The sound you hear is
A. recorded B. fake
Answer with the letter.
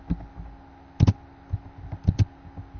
A